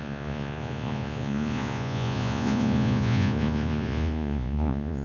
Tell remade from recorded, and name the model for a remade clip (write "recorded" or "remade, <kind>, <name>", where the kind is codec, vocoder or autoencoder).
remade, vocoder, Vocos